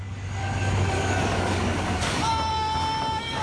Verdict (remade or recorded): remade